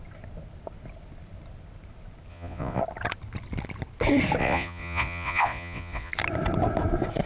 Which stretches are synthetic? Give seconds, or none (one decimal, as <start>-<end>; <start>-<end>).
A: 2.3-2.8; 4.4-6.1